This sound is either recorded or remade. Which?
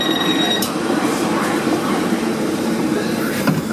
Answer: remade